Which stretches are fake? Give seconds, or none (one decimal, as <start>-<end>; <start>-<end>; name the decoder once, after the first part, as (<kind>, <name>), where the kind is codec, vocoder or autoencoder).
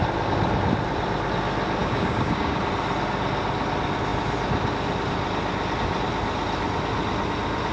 1.8-2.6 (codec, DAC)